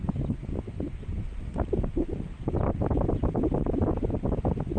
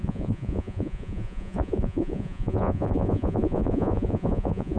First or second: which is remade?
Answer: second